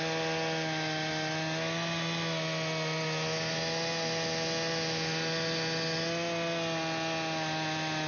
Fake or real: real